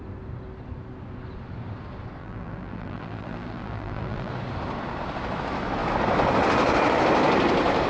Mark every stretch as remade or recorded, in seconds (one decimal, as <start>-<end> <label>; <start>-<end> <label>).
0.0-2.2 recorded; 2.2-4.3 remade; 4.3-7.9 recorded